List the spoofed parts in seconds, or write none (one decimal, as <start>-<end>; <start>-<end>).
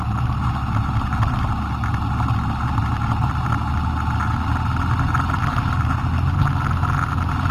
none